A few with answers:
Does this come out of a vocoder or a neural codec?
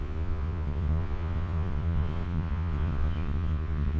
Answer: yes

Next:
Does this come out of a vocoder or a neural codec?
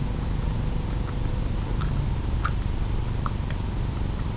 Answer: no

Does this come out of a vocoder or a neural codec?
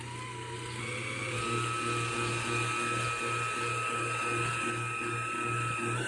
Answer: no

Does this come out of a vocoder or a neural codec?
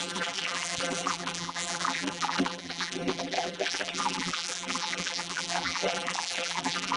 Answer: yes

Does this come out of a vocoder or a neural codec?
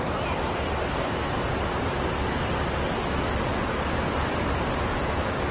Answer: no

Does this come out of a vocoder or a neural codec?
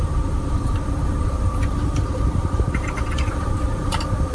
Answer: yes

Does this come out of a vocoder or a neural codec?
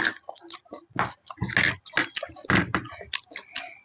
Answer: no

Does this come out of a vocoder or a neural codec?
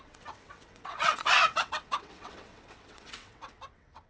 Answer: yes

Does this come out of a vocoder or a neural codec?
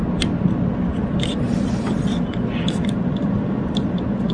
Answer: no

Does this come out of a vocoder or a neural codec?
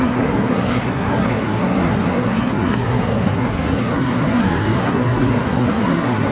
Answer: yes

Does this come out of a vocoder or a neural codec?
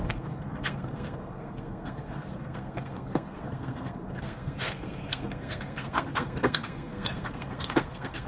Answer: yes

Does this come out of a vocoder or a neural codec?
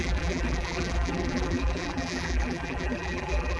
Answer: yes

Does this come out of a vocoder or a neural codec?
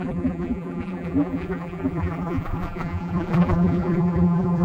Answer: yes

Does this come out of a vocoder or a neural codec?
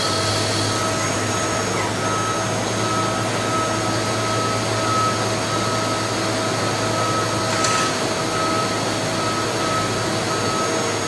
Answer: no